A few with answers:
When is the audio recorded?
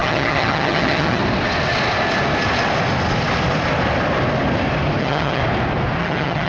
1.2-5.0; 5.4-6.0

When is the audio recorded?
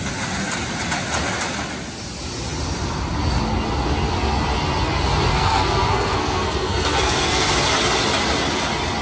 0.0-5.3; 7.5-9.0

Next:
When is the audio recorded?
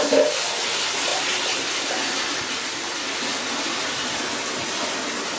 0.0-5.4